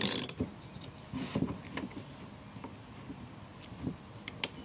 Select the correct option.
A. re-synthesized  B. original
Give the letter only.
B